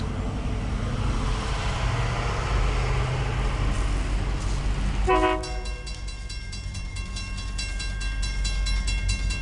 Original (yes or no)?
yes